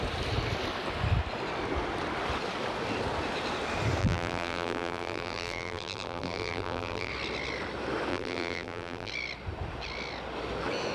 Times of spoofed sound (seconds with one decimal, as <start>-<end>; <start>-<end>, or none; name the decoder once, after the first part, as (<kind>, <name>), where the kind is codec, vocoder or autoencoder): 4.0-7.1 (vocoder, BigVGAN v2); 8.1-9.1

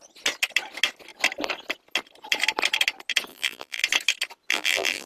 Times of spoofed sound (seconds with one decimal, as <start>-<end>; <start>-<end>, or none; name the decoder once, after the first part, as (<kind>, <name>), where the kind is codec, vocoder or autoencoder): 3.3-3.8 (vocoder, BigVGAN v2); 4.5-5.1